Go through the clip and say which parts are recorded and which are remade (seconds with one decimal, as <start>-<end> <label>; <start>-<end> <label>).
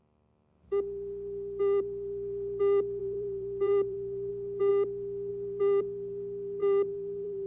0.0-3.0 recorded; 3.0-4.3 remade; 4.3-6.6 recorded; 6.6-7.5 remade